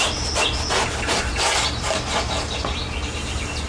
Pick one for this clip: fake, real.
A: real